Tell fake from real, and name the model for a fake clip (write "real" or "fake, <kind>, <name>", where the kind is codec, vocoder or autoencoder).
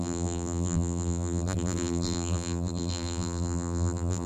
fake, vocoder, BigVGAN v2